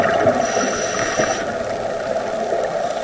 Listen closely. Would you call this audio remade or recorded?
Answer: recorded